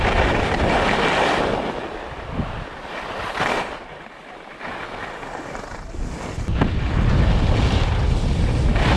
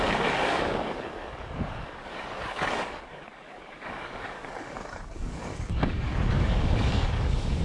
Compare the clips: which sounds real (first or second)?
first